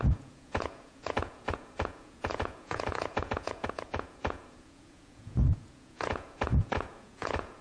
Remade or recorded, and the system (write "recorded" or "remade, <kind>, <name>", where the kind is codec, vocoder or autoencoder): remade, vocoder, Vocos